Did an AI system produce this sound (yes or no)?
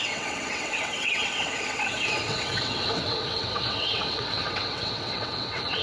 yes